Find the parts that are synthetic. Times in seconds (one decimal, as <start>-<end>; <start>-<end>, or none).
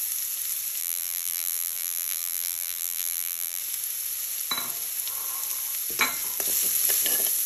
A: 0.8-3.6